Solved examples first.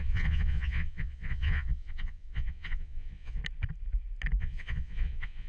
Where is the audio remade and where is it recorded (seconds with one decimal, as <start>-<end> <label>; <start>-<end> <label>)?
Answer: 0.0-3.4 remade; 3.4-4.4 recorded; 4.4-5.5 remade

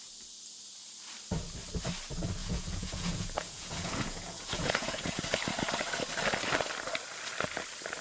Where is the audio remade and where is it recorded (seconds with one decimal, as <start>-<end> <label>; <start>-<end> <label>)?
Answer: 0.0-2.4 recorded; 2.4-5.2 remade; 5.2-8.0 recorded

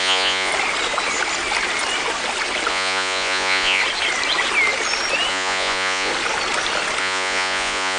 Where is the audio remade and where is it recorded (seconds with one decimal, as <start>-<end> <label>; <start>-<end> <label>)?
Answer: 0.0-0.5 remade; 0.5-2.7 recorded; 2.7-3.8 remade; 3.8-5.3 recorded; 5.3-6.1 remade; 6.1-7.0 recorded; 7.0-8.0 remade

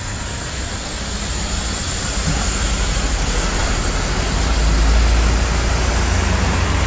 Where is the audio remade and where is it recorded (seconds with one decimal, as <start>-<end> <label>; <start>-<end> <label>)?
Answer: 0.0-6.9 recorded